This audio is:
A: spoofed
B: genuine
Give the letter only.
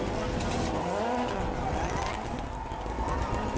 B